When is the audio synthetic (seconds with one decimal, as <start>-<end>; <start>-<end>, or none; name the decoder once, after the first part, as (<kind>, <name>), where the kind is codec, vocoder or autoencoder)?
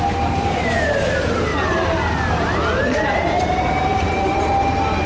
0.0-1.5 (vocoder, BigVGAN v2); 2.8-5.1